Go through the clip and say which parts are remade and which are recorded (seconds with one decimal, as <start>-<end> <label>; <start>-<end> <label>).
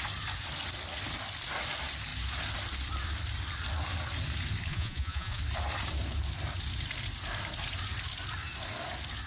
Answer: 0.0-4.7 recorded; 4.7-5.4 remade; 5.4-9.3 recorded